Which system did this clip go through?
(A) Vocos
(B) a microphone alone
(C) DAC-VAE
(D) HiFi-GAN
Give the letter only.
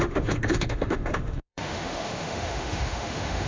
C